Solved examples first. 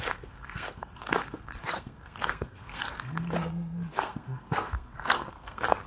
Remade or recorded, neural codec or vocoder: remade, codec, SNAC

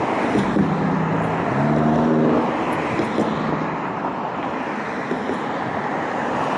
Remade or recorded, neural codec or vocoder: recorded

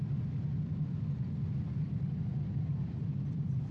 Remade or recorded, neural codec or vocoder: recorded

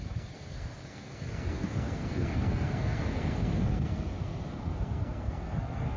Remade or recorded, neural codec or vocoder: remade, codec, SNAC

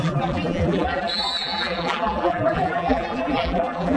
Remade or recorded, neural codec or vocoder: remade, vocoder, BigVGAN v2